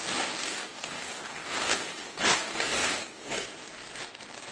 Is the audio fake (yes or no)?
yes